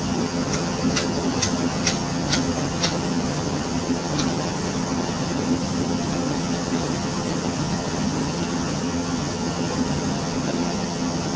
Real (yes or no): no